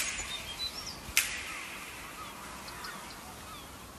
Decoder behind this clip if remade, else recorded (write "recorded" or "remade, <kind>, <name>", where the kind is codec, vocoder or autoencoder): recorded